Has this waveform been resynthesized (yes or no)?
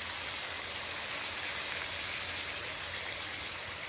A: no